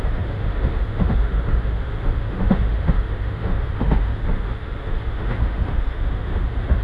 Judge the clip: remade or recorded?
remade